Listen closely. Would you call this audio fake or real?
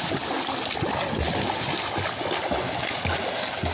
real